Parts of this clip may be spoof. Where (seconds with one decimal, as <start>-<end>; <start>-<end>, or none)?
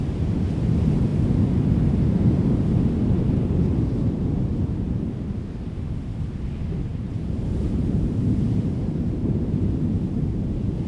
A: 1.1-2.6; 6.9-9.7